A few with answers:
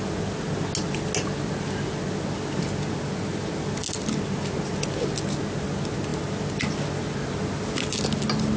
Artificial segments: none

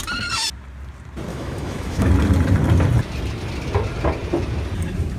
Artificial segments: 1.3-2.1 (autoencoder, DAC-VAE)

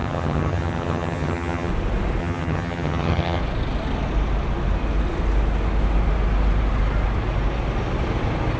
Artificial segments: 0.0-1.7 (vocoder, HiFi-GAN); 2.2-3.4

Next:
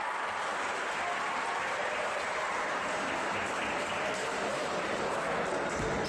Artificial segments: 1.8-2.8 (vocoder, BigVGAN v2); 4.5-5.1

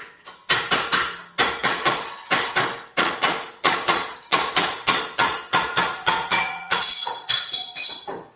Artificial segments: 1.6-2.1 (vocoder, Vocos); 3.0-8.0